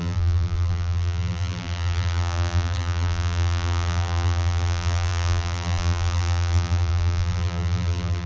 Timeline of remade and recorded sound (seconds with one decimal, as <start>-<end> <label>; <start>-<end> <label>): 0.0-8.3 remade